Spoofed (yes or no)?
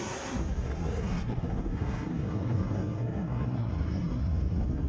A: yes